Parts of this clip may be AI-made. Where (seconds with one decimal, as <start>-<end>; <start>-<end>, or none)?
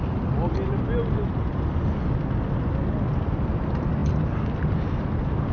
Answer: none